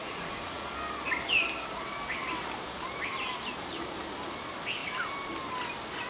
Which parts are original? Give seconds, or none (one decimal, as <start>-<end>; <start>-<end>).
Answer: 0.7-6.1